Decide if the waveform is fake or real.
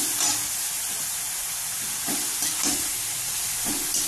real